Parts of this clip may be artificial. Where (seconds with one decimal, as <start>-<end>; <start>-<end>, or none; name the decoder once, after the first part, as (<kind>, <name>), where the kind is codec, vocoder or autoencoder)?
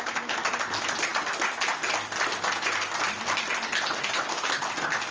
none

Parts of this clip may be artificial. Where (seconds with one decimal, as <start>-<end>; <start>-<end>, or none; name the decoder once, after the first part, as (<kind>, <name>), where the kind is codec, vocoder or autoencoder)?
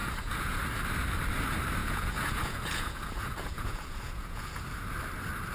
0.0-0.6 (vocoder, Vocos); 1.8-4.6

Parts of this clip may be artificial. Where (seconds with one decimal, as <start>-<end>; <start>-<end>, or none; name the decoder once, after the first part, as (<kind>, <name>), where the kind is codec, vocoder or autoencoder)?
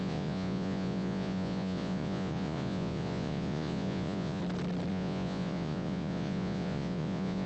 0.0-4.4 (vocoder, Vocos); 4.9-7.5